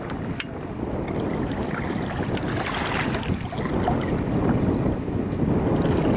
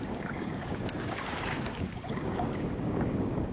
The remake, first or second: second